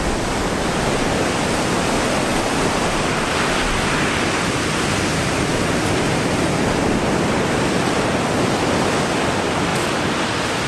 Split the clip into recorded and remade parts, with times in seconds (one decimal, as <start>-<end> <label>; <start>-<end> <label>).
0.0-2.3 recorded; 2.3-3.4 remade; 3.4-5.5 recorded; 5.5-8.5 remade; 8.5-9.7 recorded; 9.7-10.7 remade